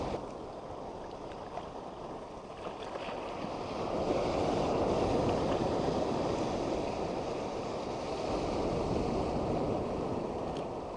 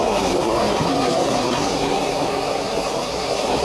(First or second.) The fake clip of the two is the second